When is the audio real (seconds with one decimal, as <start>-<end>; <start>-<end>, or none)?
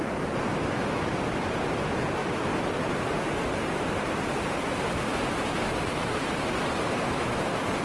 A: 0.0-2.2; 6.4-7.8